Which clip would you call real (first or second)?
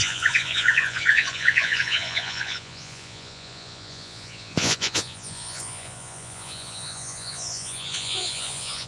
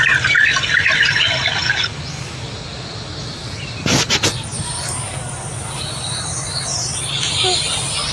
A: second